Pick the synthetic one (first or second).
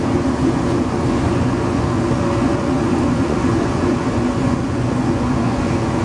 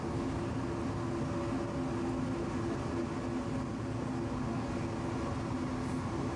first